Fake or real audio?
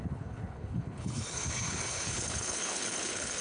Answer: fake